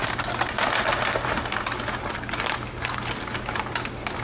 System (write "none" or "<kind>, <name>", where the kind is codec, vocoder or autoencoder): none